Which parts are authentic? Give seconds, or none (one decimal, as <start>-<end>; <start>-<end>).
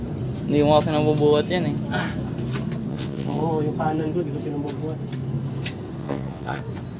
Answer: 0.0-2.9; 3.4-6.0; 6.6-7.0